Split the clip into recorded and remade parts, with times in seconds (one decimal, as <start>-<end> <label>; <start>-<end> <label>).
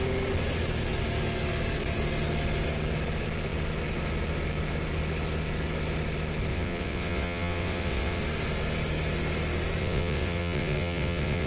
0.0-6.5 recorded; 6.5-8.2 remade; 8.2-9.8 recorded; 9.8-11.5 remade